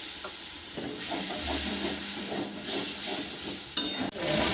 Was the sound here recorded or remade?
recorded